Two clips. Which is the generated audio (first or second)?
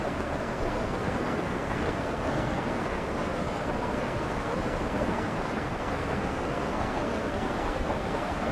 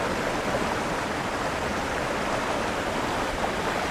first